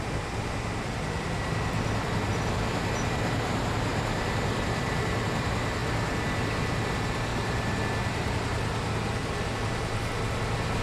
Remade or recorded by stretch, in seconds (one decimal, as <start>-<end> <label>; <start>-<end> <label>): 0.0-3.9 recorded; 3.9-5.1 remade; 5.1-7.3 recorded; 7.3-7.8 remade; 7.8-10.8 recorded